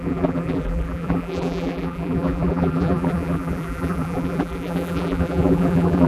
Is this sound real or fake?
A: fake